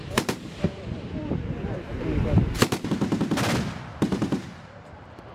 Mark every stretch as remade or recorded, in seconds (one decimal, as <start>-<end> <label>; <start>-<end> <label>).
0.0-3.2 remade; 3.2-3.9 recorded; 3.9-5.3 remade